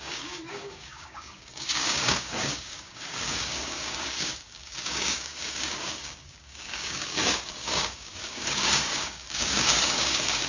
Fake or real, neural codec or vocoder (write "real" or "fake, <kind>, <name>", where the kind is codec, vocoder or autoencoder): fake, codec, DAC